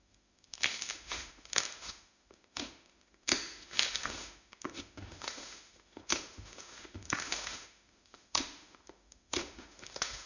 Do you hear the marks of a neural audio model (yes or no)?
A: yes